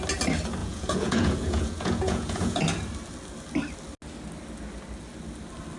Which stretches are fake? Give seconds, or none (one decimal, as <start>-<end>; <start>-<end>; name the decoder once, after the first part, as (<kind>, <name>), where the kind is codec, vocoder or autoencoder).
0.6-2.6 (vocoder, Vocos)